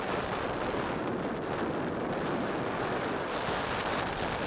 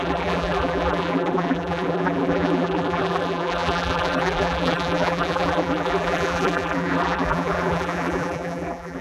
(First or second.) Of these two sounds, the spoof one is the second